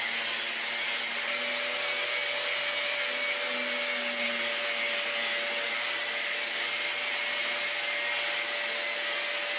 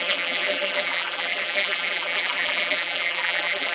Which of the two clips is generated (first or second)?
second